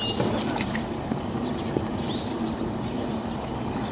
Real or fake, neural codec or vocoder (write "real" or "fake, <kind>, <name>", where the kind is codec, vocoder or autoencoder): fake, vocoder, BigVGAN v2